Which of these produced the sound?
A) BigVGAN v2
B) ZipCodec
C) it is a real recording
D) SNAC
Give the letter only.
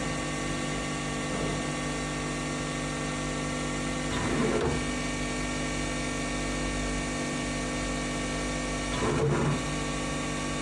C